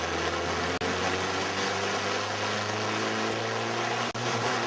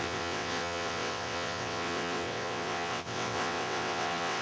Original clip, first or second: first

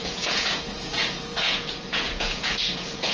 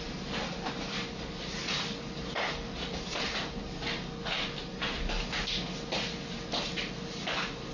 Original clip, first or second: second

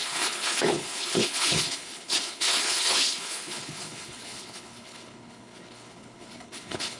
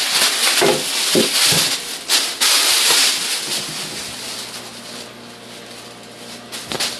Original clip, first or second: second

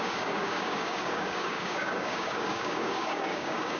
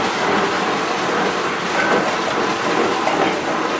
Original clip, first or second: second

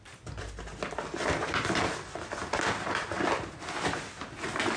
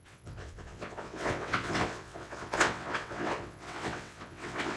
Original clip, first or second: first